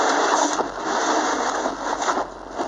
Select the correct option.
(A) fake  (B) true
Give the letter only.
B